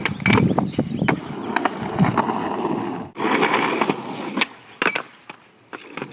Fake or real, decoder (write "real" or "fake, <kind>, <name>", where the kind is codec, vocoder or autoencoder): real